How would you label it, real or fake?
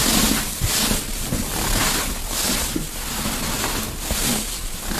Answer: real